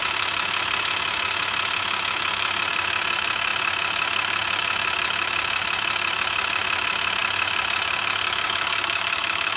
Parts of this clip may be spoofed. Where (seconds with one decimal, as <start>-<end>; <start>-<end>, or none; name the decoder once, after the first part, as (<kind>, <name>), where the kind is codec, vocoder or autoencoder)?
0.0-9.6 (autoencoder, DAC-VAE)